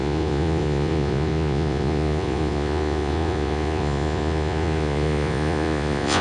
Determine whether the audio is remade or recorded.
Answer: remade